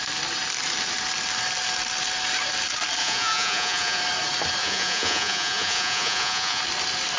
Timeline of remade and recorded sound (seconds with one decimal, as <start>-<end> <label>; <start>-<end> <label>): 0.0-3.0 recorded; 3.0-4.0 remade; 4.0-4.6 recorded; 4.6-6.6 remade; 6.6-7.2 recorded